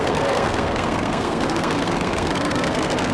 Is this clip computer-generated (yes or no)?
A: yes